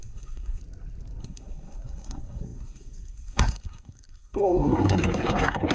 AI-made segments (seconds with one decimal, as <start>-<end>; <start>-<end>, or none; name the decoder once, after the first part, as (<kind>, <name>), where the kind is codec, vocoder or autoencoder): 0.0-0.6 (codec, SNAC); 1.2-5.7